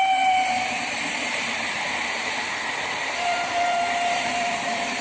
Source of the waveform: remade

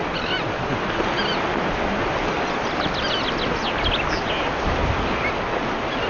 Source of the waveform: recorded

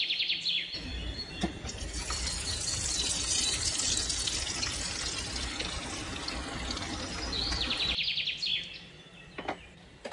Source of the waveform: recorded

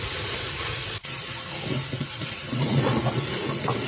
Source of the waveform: remade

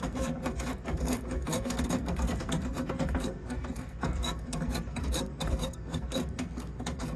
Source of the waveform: remade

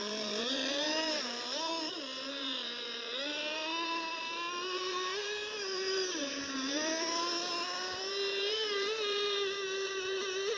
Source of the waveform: remade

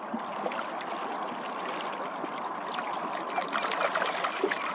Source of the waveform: recorded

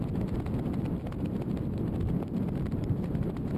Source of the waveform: recorded